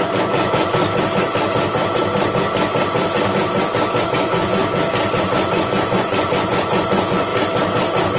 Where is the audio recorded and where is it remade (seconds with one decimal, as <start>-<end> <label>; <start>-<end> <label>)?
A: 0.0-0.8 remade; 0.8-4.0 recorded; 4.0-4.6 remade; 4.6-5.2 recorded; 5.2-7.3 remade; 7.3-8.2 recorded